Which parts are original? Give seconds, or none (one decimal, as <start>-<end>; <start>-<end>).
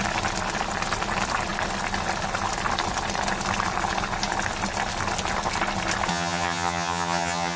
0.0-6.1